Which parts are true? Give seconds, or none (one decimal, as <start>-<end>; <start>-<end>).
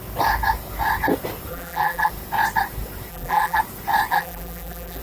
0.0-1.5; 2.1-3.1; 3.6-4.1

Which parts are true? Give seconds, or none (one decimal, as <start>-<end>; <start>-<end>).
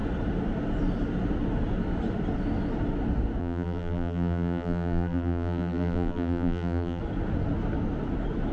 0.0-3.4; 7.0-8.5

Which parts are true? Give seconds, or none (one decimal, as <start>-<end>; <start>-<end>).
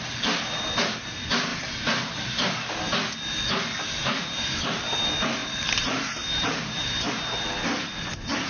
0.0-1.5; 2.8-4.0; 4.8-5.4; 7.1-8.5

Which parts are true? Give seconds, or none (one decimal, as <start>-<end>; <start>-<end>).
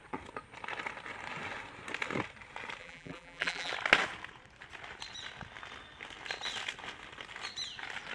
0.0-2.8; 3.7-8.1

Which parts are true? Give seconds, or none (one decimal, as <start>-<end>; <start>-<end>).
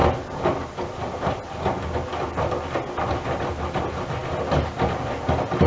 0.0-5.7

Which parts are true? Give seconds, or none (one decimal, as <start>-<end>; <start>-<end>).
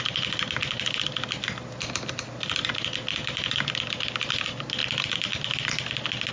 0.0-6.3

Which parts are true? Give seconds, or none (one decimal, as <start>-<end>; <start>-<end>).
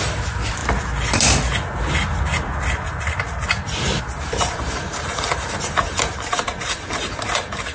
0.6-4.0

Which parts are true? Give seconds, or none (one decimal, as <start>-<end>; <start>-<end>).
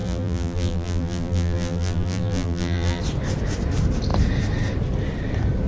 3.0-5.7